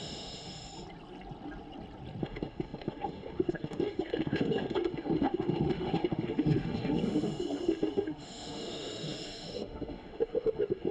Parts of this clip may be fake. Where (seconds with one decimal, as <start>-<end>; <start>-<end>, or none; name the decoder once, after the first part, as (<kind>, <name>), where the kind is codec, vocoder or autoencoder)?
0.0-0.7 (autoencoder, DAC-VAE); 2.2-10.9